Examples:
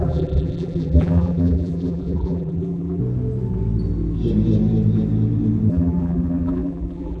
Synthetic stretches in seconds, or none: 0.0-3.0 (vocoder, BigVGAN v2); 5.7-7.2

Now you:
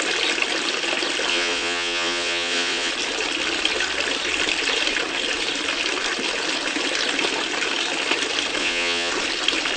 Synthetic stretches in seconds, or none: 1.3-2.9 (vocoder, Vocos); 8.6-9.1

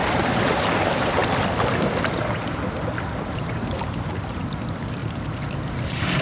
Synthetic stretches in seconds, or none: 0.5-1.2 (vocoder, BigVGAN v2); 3.3-5.0; 5.7-6.2

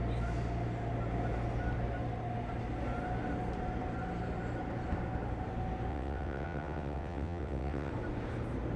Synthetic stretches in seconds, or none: 5.9-7.9 (vocoder, WaveNeXt)

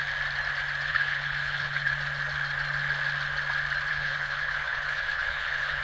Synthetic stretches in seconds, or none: 0.9-1.9 (codec, HILCodec); 3.9-5.8

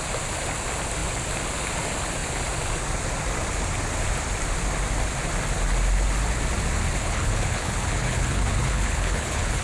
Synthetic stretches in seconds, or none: 7.0-9.6 (codec, HILCodec)

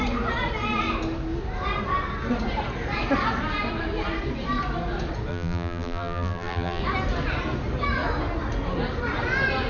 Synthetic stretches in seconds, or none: 5.3-6.8 (vocoder, BigVGAN v2)